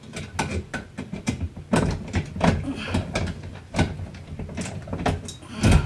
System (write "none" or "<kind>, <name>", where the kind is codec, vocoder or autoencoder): none